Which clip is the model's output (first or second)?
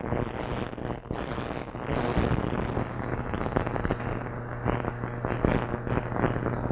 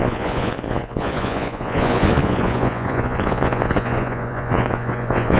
second